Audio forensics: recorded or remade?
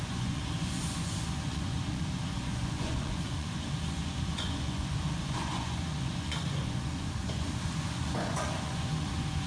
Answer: remade